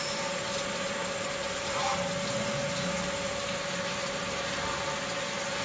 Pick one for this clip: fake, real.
real